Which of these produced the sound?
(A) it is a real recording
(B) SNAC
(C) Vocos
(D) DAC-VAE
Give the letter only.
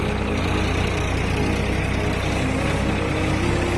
A